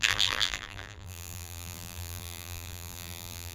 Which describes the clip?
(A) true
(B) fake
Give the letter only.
B